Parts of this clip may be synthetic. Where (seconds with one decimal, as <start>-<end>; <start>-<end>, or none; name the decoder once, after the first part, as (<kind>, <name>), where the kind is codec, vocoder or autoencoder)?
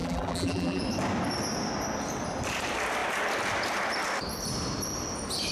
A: 0.0-0.8 (vocoder, BigVGAN v2)